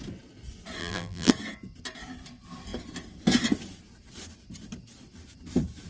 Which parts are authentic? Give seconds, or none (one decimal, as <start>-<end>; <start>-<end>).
0.0-0.8; 1.3-5.9